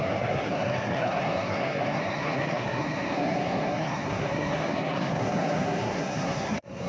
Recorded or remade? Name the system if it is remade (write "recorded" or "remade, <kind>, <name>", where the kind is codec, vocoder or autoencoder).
remade, codec, SNAC